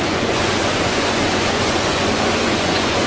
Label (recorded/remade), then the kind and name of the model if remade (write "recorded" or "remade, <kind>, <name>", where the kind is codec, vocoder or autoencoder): remade, vocoder, Vocos